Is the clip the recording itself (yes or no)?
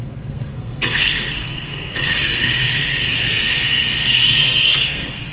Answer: no